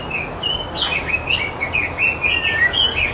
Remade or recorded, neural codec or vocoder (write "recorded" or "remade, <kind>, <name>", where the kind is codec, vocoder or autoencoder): recorded